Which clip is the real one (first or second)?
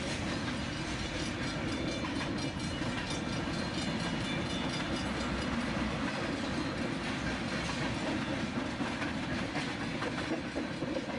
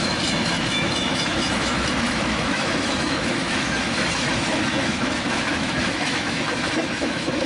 first